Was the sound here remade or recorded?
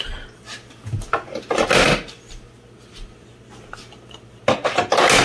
recorded